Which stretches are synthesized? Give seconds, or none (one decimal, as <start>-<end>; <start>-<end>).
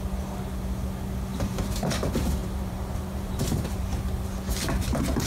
1.3-1.9; 2.4-4.0